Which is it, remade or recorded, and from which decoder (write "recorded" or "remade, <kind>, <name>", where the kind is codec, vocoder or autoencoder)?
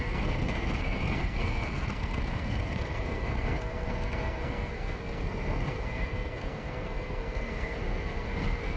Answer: remade, codec, SNAC